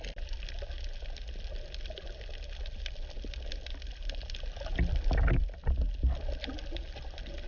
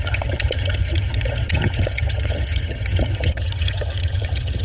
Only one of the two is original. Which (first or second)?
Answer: first